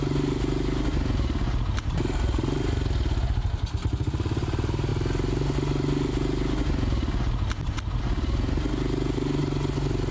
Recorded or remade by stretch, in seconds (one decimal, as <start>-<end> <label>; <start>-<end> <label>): 0.0-10.1 recorded